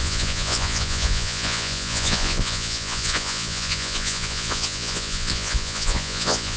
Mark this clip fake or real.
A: fake